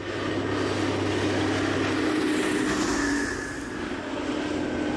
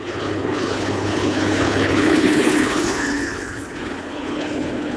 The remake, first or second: second